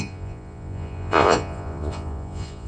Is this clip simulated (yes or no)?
yes